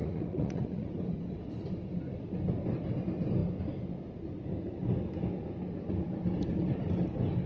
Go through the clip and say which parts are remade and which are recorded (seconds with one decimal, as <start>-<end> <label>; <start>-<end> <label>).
0.0-0.9 remade; 0.9-7.5 recorded